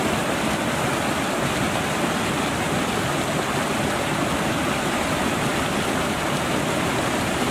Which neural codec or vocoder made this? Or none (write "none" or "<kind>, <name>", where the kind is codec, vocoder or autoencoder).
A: none